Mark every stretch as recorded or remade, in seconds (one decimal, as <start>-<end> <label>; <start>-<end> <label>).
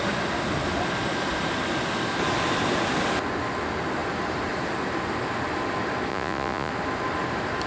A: 0.0-6.1 recorded; 6.1-6.7 remade; 6.7-7.7 recorded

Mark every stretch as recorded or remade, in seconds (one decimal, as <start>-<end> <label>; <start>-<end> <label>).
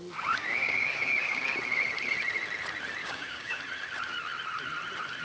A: 0.0-0.6 recorded; 0.6-1.4 remade; 1.4-3.0 recorded; 3.0-3.6 remade; 3.6-5.2 recorded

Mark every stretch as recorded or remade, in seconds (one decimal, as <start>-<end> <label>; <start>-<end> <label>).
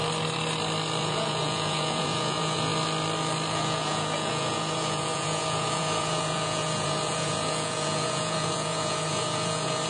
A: 0.0-1.0 recorded; 1.0-2.7 remade; 2.7-3.5 recorded; 3.5-9.9 remade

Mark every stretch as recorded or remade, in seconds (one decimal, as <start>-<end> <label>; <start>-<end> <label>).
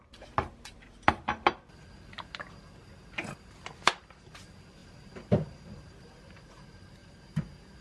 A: 0.0-4.8 recorded; 4.8-6.4 remade; 6.4-7.0 recorded; 7.0-7.8 remade